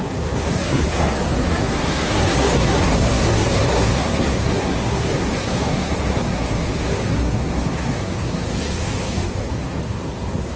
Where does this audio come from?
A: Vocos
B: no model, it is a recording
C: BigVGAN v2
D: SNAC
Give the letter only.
D